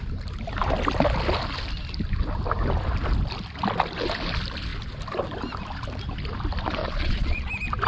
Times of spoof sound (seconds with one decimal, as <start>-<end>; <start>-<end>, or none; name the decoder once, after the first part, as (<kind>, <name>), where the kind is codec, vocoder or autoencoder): 6.8-7.5 (vocoder, Vocos)